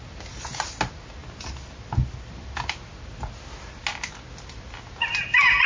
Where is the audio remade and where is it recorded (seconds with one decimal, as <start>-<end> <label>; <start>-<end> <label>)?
0.0-5.7 recorded